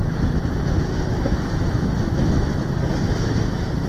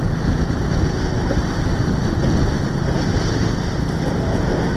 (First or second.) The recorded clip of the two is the second